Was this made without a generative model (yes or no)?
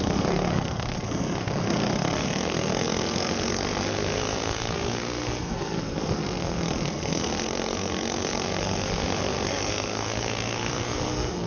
no